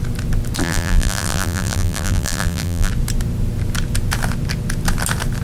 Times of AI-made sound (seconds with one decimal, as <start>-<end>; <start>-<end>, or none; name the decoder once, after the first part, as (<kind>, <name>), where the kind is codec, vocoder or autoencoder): 0.6-2.9 (vocoder, BigVGAN v2)